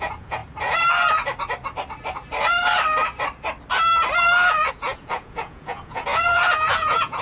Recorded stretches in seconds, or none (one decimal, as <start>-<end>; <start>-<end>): 0.4-4.7